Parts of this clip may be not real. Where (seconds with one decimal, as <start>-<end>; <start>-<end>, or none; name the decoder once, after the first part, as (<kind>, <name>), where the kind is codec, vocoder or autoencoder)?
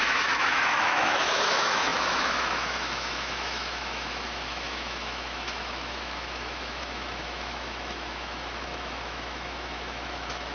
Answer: 0.0-10.5 (autoencoder, DAC-VAE)